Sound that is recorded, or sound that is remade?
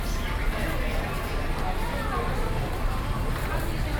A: recorded